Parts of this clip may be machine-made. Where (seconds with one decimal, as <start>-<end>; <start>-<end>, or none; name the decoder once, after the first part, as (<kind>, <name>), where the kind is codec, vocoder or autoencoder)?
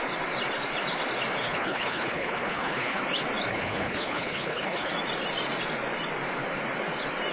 1.4-3.0 (codec, HILCodec); 3.5-4.9